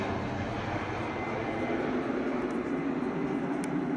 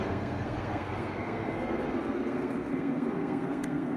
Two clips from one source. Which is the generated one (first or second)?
second